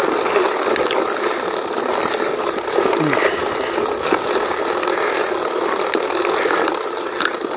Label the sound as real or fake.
real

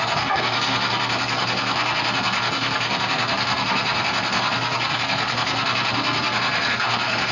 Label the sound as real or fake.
fake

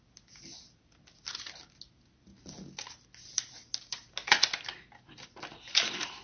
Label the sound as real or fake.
real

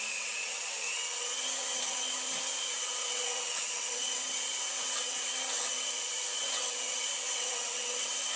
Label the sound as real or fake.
fake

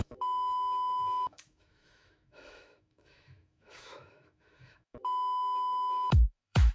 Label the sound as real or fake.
fake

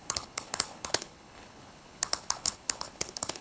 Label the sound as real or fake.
fake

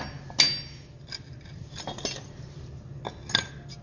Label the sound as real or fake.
real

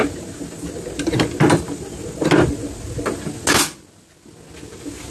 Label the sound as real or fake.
real